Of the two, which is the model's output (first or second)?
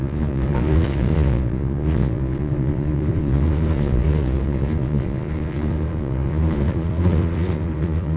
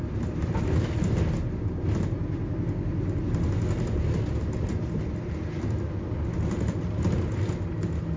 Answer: first